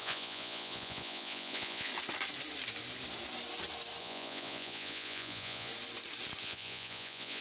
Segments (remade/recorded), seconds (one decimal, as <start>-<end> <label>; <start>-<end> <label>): 0.0-1.9 remade; 1.9-4.0 recorded; 4.0-5.7 remade; 5.7-6.4 recorded; 6.4-7.4 remade